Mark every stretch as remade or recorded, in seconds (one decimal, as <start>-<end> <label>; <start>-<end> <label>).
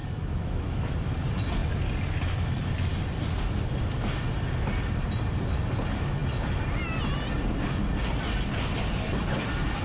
0.0-0.9 remade; 0.9-9.8 recorded